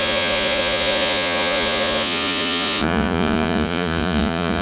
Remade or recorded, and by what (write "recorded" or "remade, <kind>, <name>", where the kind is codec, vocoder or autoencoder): remade, vocoder, Vocos